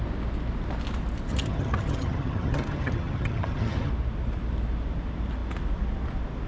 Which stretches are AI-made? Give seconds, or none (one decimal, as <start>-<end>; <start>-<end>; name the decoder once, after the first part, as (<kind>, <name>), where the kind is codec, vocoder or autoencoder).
1.3-3.9 (vocoder, HiFi-GAN)